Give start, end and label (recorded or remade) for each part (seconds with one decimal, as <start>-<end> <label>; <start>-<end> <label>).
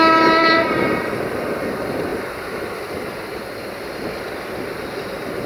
0.0-5.5 recorded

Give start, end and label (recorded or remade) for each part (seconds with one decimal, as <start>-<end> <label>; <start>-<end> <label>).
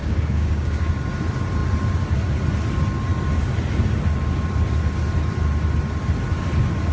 0.0-0.9 remade; 0.9-6.9 recorded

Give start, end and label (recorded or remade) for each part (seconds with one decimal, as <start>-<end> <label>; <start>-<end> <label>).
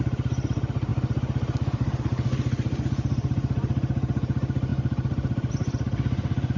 0.0-6.6 recorded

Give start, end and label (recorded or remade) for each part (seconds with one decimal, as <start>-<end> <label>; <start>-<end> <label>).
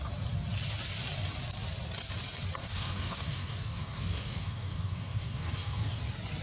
0.0-2.6 recorded; 2.6-6.0 remade; 6.0-6.4 recorded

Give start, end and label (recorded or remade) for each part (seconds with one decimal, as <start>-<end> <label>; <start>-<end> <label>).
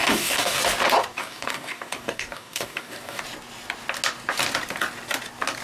0.0-0.6 remade; 0.6-1.1 recorded; 1.1-3.2 remade; 3.2-5.6 recorded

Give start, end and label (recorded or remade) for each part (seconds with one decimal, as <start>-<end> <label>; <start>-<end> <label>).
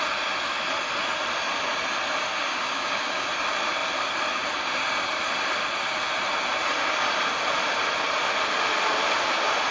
0.0-2.5 recorded; 2.5-3.3 remade; 3.3-9.7 recorded